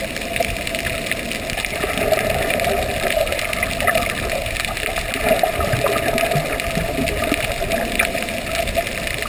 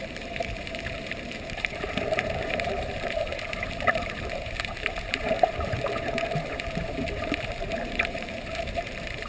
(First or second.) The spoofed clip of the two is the second